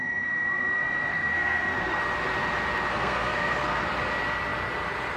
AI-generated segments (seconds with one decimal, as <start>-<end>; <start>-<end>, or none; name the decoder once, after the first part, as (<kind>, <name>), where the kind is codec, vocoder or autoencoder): 1.1-2.0 (codec, SNAC); 2.9-3.8